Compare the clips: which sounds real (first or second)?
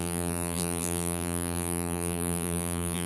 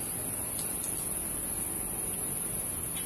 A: second